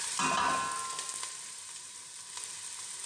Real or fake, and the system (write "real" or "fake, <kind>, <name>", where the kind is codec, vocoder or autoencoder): real